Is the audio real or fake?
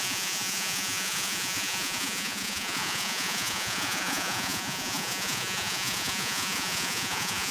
fake